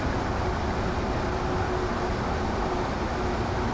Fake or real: real